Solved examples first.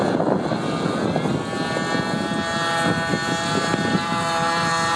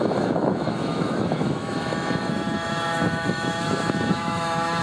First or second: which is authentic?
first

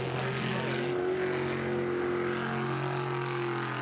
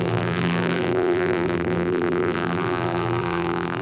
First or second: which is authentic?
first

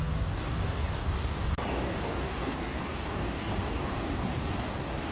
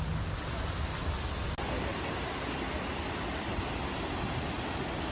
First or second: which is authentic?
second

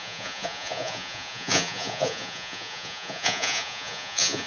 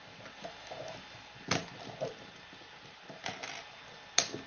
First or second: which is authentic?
second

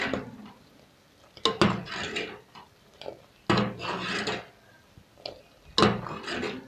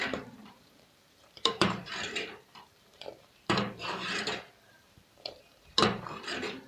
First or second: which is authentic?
first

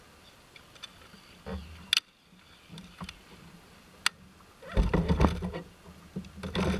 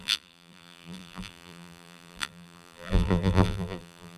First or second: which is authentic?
first